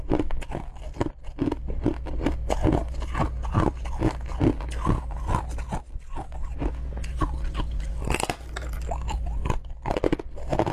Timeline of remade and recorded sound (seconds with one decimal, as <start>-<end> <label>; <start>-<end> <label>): 0.0-10.7 recorded